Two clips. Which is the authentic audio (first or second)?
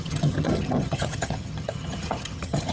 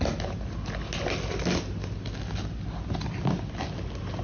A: second